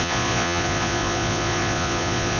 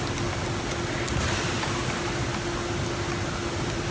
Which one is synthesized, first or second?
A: first